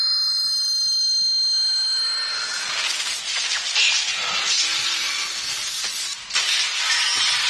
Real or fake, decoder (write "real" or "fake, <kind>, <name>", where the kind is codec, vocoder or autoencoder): real